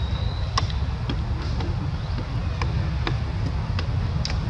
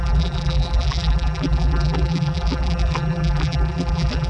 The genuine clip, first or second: first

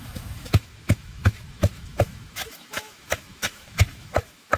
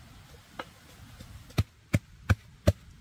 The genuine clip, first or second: second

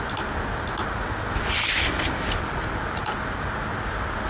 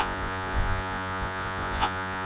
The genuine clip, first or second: first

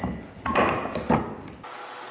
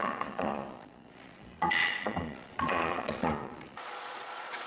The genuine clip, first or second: first